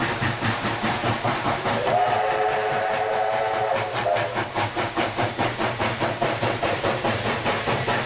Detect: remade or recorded remade